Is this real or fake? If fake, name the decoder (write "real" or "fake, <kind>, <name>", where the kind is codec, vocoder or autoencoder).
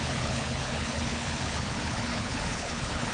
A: fake, codec, HILCodec